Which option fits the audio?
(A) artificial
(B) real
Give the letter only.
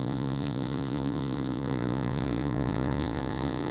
A